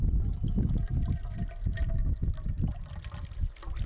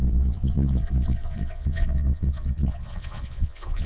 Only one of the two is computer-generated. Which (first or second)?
second